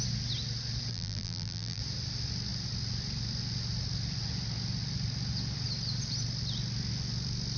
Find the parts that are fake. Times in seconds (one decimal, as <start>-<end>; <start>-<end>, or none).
0.9-1.8